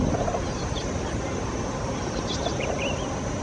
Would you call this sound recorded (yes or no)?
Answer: yes